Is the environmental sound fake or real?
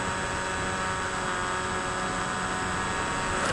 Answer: real